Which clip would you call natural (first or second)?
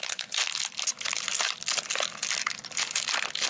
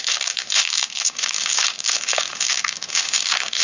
first